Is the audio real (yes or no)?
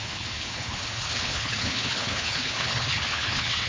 no